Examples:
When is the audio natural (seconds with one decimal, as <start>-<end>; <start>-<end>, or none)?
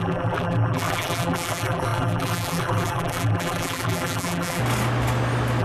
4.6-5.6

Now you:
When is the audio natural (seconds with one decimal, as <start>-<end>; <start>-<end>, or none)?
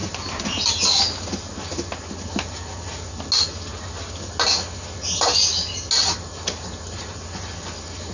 0.0-8.1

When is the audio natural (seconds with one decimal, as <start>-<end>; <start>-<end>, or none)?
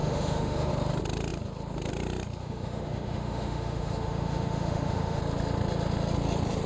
0.7-2.4; 5.2-6.7